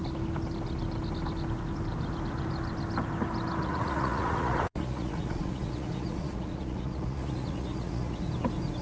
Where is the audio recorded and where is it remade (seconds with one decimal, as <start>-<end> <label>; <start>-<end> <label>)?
0.0-3.6 recorded; 3.6-8.3 remade; 8.3-8.8 recorded